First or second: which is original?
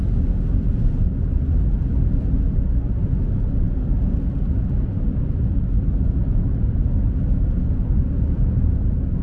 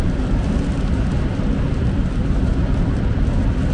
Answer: first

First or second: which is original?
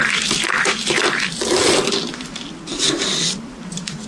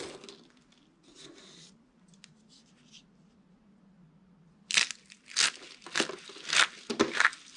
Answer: second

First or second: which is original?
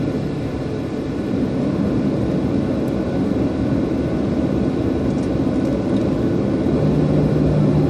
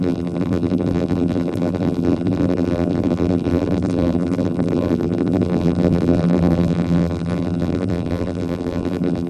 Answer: first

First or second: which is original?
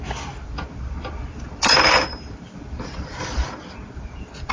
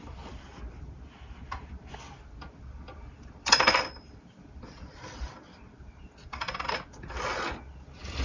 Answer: second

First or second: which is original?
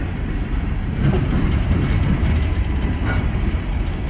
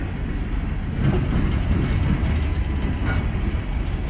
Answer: second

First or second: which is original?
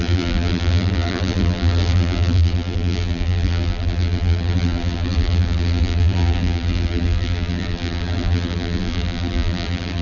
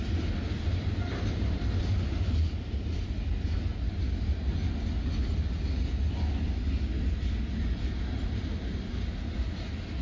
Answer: second